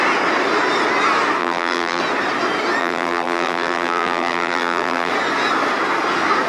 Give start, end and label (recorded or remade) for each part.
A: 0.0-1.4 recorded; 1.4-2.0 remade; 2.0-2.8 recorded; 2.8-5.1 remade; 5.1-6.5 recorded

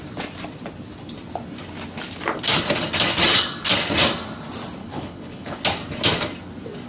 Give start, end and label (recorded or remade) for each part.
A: 0.0-4.8 recorded; 4.8-5.6 remade; 5.6-6.9 recorded

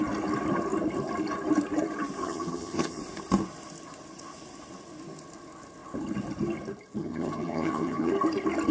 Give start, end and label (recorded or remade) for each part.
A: 0.0-2.2 recorded; 2.2-3.0 remade; 3.0-7.0 recorded; 7.0-8.1 remade; 8.1-8.7 recorded

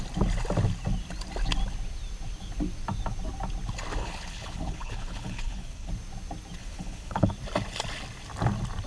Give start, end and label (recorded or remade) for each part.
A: 0.0-4.0 recorded; 4.0-5.9 remade; 5.9-6.6 recorded; 6.6-7.3 remade; 7.3-8.9 recorded

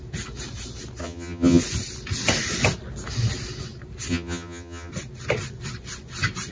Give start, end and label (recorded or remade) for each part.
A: 0.0-1.0 recorded; 1.0-1.6 remade; 1.6-4.1 recorded; 4.1-4.9 remade; 4.9-6.5 recorded

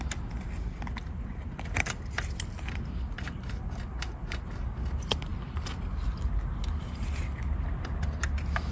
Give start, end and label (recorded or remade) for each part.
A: 0.0-8.7 recorded

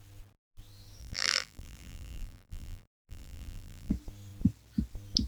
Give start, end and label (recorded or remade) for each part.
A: 0.0-1.0 recorded; 1.0-3.9 remade; 3.9-5.3 recorded